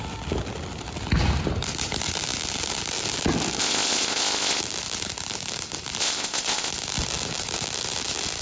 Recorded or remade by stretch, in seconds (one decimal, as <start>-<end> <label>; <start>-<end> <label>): 0.0-3.6 recorded; 3.6-4.6 remade; 4.6-6.0 recorded; 6.0-6.7 remade; 6.7-8.4 recorded